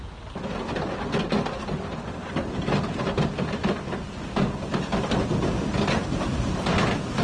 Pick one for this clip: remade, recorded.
recorded